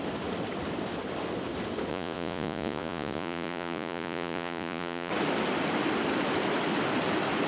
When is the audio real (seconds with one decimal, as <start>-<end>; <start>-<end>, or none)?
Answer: 0.0-1.9; 5.1-7.5